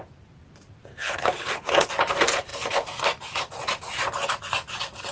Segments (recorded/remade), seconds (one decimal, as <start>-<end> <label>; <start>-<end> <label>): 0.0-0.9 recorded; 0.9-1.9 remade; 1.9-5.1 recorded